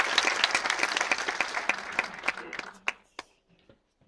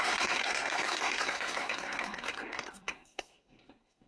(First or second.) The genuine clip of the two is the first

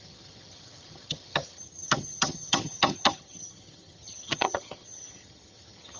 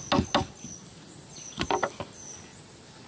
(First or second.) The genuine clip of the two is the second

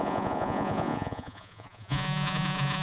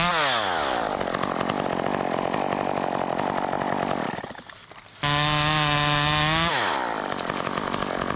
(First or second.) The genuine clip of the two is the second